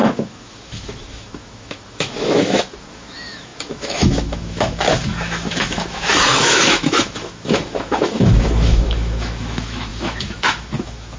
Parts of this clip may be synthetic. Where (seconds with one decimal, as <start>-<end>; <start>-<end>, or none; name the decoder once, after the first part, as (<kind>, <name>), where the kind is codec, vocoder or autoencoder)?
0.0-11.2 (autoencoder, DAC-VAE)